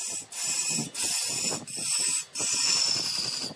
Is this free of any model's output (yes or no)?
yes